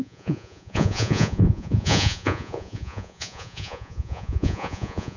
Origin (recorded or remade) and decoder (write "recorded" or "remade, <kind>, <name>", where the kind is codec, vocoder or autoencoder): remade, vocoder, Vocos